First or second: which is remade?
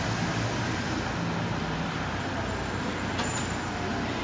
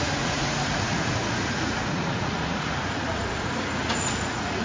second